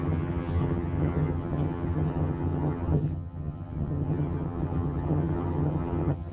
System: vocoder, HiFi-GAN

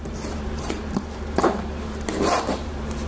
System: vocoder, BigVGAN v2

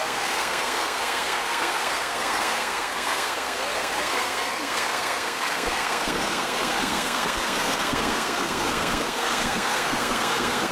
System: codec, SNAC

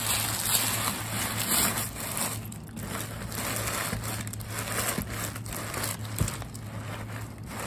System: none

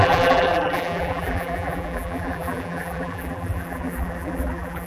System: vocoder, BigVGAN v2